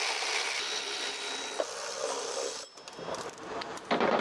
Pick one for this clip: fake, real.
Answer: real